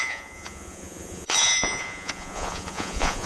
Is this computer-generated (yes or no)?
yes